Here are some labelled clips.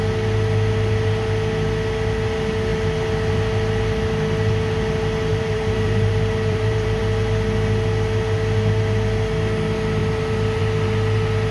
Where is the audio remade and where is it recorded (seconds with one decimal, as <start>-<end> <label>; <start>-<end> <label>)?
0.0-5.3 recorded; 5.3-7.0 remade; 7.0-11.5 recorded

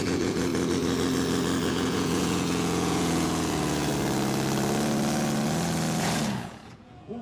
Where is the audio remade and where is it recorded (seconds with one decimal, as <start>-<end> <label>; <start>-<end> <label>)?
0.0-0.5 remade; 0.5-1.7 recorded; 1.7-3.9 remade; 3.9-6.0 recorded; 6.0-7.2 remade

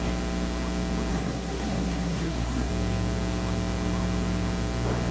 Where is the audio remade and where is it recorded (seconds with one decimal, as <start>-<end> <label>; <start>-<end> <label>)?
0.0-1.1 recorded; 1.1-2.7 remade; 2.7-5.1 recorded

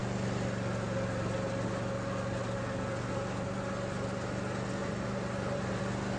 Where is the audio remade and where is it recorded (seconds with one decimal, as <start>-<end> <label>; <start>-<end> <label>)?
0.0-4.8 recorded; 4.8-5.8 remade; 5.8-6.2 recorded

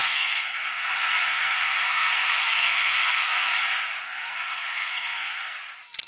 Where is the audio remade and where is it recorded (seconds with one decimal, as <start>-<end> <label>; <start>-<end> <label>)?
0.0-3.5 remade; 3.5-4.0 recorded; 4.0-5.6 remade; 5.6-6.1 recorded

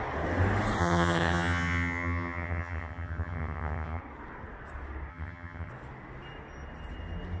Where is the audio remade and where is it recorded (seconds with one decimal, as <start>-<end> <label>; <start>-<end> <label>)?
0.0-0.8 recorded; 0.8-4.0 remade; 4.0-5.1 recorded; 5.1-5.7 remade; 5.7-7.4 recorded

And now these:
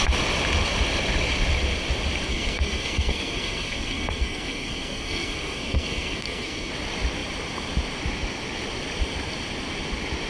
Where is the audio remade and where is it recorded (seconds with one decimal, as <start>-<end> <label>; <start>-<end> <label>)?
0.0-2.3 recorded; 2.3-6.7 remade; 6.7-10.3 recorded

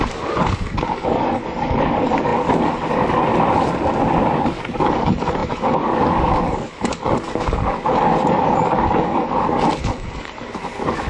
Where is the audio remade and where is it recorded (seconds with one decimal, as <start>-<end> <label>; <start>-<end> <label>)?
0.0-3.3 remade; 3.3-4.2 recorded; 4.2-11.1 remade